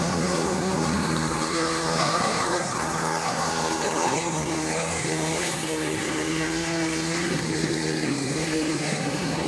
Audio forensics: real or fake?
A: fake